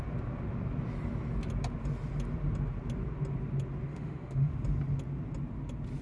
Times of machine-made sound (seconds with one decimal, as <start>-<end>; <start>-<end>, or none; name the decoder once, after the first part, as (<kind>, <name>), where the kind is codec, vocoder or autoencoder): 3.9-4.5 (autoencoder, DAC-VAE)